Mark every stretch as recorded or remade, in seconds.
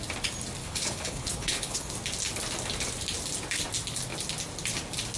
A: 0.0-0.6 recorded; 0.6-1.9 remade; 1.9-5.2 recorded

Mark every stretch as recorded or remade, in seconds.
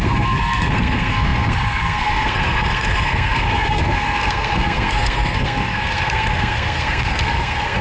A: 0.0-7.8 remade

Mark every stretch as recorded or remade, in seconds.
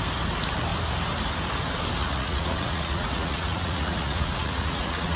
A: 0.0-2.0 recorded; 2.0-5.2 remade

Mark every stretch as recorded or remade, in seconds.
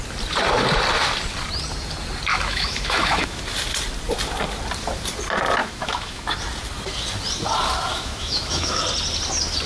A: 0.0-2.3 recorded; 2.3-3.4 remade; 3.4-5.6 recorded; 5.6-6.4 remade; 6.4-7.9 recorded; 7.9-8.8 remade; 8.8-9.7 recorded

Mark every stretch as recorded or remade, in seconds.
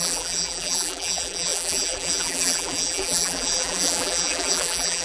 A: 0.0-5.0 remade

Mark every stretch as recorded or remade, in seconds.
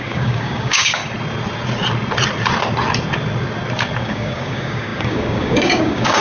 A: 0.0-1.0 remade; 1.0-4.0 recorded; 4.0-6.2 remade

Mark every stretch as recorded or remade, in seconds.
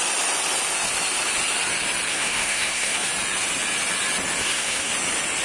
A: 0.0-2.1 recorded; 2.1-3.1 remade; 3.1-4.4 recorded; 4.4-4.9 remade; 4.9-5.4 recorded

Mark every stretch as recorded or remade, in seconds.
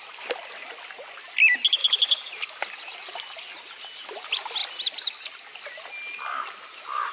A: 0.0-7.1 recorded